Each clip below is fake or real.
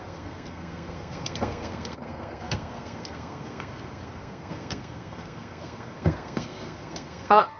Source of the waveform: fake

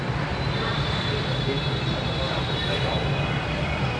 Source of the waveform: fake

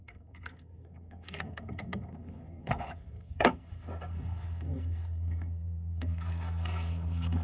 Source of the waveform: fake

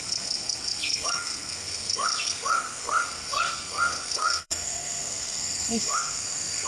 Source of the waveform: fake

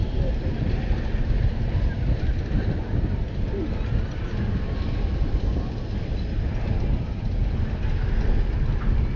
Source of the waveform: real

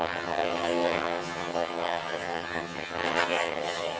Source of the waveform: fake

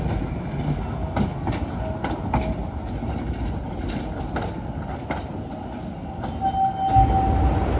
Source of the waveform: real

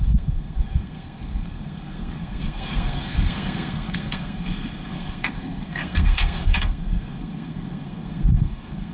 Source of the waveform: fake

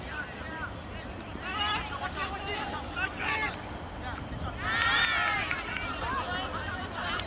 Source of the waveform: real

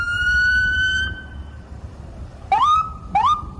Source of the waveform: fake